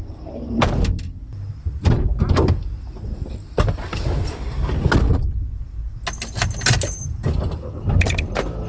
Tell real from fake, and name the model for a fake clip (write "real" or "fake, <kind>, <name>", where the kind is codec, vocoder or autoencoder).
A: real